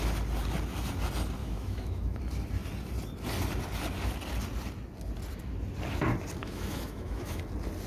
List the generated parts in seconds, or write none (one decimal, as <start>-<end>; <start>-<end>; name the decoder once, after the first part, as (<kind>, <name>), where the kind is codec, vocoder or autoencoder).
1.4-2.2 (autoencoder, DAC-VAE); 6.4-7.4